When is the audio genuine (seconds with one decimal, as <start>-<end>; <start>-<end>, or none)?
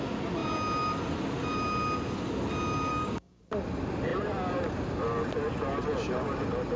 0.0-2.9; 3.4-6.8